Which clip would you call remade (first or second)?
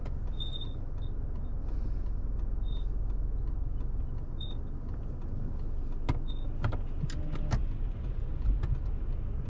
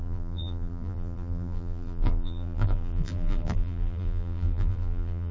second